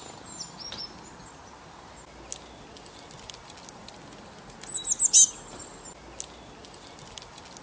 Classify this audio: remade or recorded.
recorded